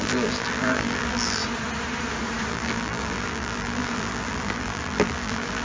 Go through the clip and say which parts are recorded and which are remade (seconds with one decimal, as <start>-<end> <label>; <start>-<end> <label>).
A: 0.0-1.4 remade; 1.4-2.5 recorded; 2.5-5.6 remade